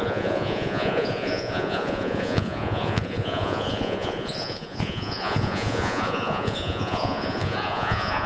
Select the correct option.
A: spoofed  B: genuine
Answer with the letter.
A